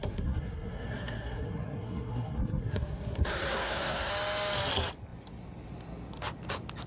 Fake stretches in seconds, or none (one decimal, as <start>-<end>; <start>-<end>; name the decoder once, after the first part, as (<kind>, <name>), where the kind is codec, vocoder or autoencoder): 0.0-4.1 (codec, SNAC)